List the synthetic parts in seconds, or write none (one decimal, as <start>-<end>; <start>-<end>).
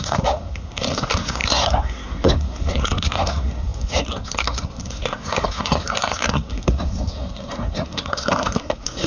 0.0-9.1